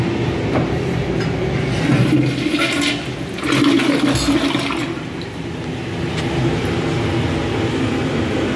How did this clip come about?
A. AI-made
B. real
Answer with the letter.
B